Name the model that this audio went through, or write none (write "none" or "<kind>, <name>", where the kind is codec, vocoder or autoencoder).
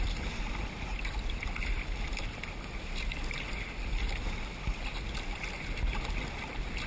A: none